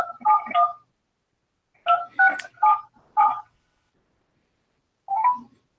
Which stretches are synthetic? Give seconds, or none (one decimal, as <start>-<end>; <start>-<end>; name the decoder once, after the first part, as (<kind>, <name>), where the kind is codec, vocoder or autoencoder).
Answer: 3.2-3.9 (vocoder, WaveNeXt)